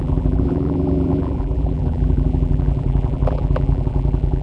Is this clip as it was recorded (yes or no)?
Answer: no